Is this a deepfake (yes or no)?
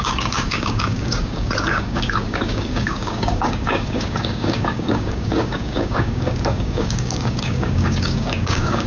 yes